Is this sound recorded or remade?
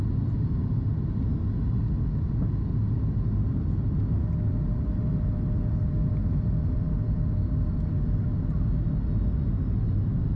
recorded